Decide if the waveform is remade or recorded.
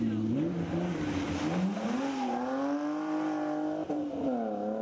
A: recorded